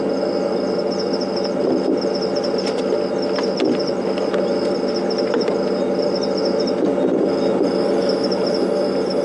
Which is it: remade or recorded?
recorded